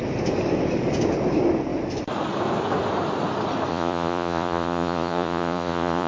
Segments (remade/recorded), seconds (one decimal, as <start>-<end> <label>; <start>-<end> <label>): 0.0-3.7 recorded; 3.7-6.1 remade